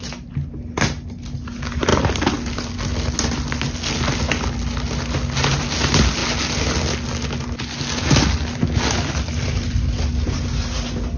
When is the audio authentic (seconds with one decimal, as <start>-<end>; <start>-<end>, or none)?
0.0-11.2